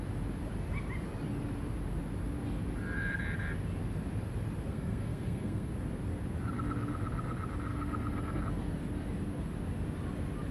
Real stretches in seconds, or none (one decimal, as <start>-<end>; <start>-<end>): 0.0-4.7; 5.7-7.7; 8.4-10.5